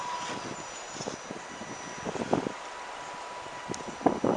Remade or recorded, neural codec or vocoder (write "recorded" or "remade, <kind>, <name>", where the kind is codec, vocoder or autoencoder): recorded